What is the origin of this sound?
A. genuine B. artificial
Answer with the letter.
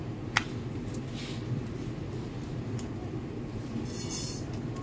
A